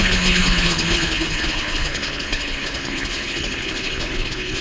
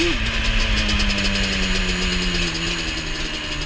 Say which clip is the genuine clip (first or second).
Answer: second